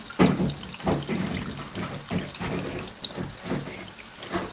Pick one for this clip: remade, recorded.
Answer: recorded